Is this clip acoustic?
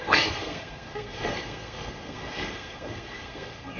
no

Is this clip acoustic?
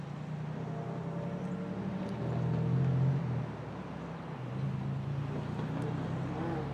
yes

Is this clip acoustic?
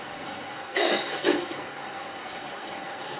no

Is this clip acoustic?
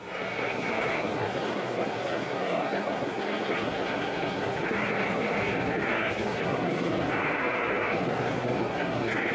no